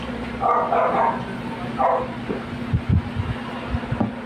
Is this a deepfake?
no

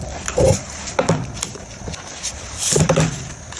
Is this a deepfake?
no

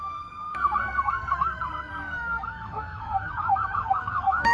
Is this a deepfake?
yes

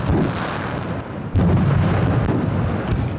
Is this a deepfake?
no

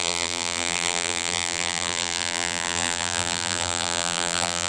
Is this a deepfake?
yes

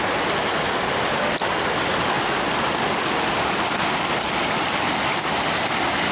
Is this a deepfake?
no